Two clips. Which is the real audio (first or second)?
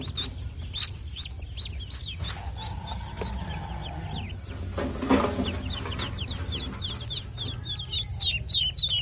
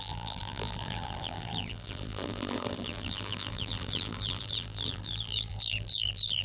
first